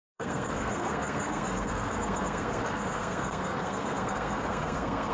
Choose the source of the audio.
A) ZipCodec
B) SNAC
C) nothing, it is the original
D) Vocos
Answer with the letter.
B